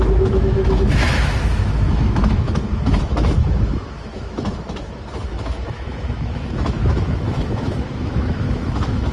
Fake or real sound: fake